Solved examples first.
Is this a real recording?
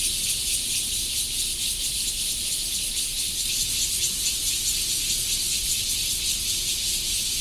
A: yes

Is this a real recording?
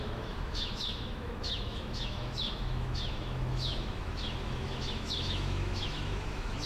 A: no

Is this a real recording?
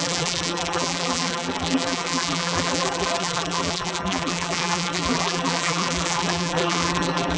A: no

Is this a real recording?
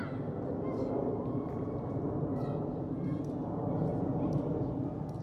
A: yes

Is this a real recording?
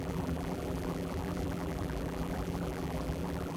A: no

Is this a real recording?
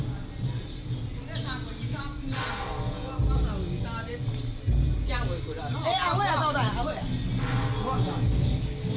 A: yes